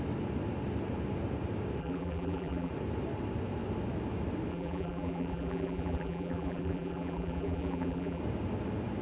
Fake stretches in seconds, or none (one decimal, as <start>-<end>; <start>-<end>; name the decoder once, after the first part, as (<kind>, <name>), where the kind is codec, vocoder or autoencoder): 1.8-2.7 (vocoder, BigVGAN v2); 4.5-8.2